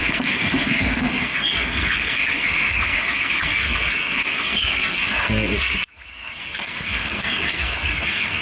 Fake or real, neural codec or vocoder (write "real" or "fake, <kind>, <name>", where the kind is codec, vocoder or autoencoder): fake, codec, SNAC